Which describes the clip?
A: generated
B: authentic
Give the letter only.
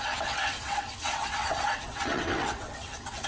A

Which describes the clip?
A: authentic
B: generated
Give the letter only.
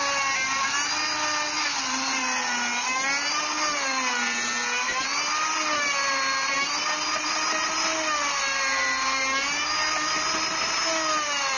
A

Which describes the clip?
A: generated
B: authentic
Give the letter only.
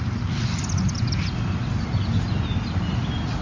B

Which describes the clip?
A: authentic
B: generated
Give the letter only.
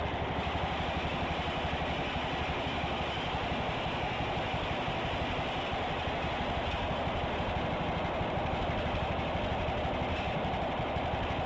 A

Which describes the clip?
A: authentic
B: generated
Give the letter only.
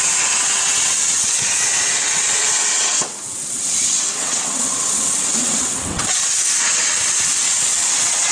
B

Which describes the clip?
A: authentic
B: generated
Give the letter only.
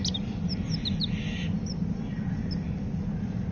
A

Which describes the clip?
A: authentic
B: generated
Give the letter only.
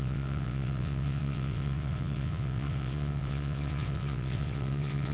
B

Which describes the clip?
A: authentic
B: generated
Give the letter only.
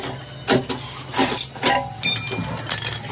A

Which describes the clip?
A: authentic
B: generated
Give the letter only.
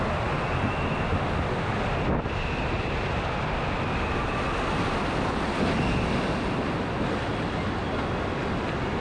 A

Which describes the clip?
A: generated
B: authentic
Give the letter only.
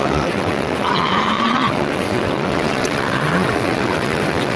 A